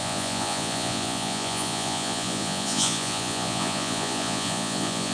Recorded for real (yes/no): no